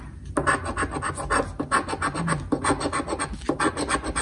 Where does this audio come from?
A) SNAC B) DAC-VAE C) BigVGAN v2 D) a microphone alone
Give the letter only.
D